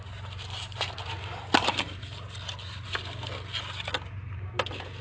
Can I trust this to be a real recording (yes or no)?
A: yes